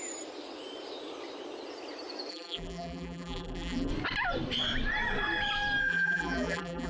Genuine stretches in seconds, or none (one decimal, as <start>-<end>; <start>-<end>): 0.0-2.3; 3.9-5.8